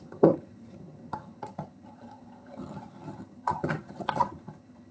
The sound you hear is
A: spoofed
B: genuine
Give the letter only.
A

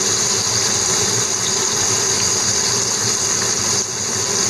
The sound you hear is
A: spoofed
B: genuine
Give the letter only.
B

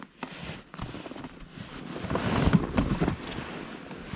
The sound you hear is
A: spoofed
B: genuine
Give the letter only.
B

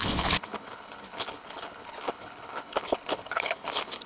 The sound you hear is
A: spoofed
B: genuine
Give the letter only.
A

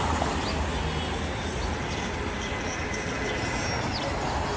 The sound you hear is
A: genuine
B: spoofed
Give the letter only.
A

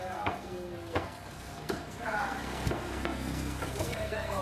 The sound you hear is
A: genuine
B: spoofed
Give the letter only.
B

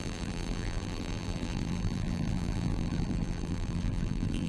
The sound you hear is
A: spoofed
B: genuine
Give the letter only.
A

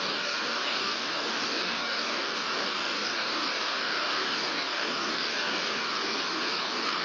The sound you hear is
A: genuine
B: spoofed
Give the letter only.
B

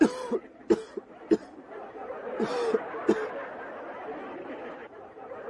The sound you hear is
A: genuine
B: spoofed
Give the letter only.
A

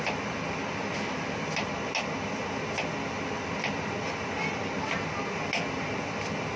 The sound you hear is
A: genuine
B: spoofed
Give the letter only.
A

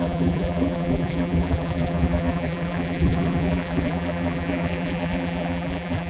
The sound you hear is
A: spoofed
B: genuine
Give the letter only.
A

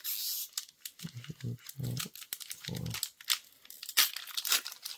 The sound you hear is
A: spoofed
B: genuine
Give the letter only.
B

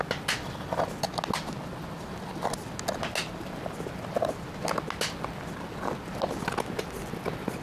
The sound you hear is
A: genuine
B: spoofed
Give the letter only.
A